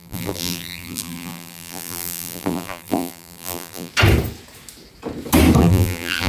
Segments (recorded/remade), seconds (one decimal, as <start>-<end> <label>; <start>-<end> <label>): 0.0-3.9 remade; 3.9-5.6 recorded; 5.6-6.3 remade